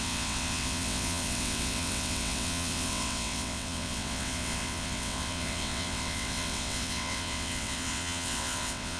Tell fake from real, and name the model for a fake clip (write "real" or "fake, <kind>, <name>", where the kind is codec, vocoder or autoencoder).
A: fake, vocoder, WaveNeXt